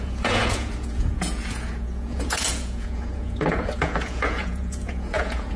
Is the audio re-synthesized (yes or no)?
yes